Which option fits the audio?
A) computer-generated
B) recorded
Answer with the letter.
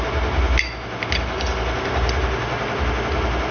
B